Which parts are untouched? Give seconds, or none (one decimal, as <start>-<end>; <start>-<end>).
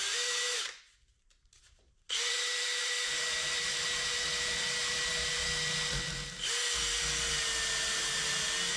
5.4-8.8